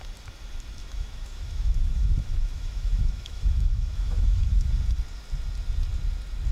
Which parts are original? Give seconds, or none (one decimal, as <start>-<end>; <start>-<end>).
0.0-0.8; 4.7-6.5